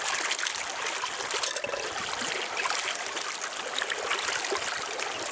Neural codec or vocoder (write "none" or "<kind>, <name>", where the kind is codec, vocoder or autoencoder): none